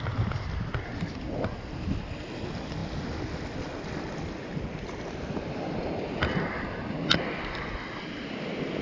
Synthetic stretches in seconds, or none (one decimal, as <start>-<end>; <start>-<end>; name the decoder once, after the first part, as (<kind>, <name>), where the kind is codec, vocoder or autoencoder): none